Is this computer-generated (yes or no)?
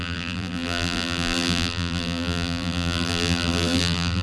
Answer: yes